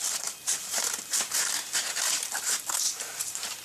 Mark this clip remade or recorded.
remade